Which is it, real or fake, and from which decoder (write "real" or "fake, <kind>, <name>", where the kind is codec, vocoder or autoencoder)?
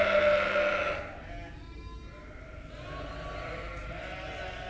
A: real